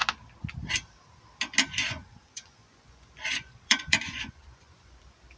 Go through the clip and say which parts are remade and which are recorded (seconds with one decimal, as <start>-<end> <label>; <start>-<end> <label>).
0.0-1.8 recorded; 1.8-5.0 remade; 5.0-5.4 recorded